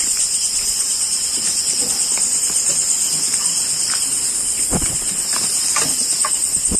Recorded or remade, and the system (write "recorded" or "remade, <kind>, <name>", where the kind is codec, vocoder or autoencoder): recorded